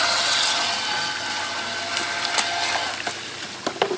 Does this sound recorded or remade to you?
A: recorded